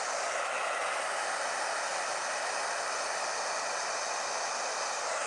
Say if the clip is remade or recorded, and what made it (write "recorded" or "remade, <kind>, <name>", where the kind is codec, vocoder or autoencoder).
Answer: recorded